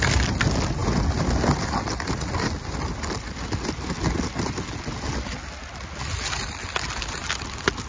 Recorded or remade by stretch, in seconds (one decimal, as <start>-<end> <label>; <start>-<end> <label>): 0.0-7.9 recorded